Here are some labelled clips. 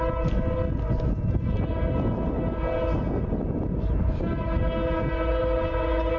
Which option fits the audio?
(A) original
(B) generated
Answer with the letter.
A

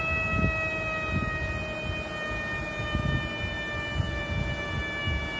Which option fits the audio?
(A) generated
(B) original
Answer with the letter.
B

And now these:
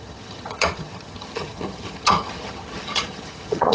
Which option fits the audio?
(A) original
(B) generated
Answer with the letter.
B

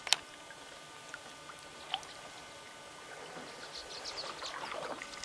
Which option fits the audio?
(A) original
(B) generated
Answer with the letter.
A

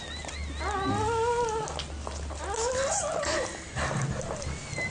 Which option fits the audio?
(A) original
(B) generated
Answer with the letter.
A